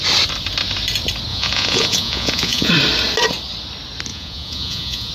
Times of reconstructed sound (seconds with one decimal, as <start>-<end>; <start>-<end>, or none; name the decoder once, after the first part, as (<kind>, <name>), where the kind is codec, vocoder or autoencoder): 1.3-2.7 (vocoder, Vocos); 4.1-5.1